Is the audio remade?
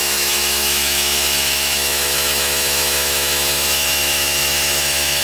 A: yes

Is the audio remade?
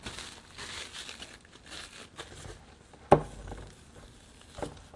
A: no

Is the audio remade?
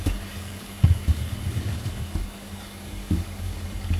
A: yes